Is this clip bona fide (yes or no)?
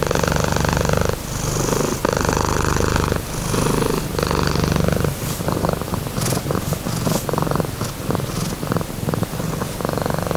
yes